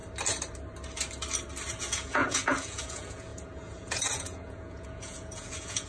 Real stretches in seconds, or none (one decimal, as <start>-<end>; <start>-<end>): 0.0-1.8